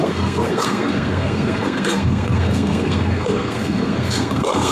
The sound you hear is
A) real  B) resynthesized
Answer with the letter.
B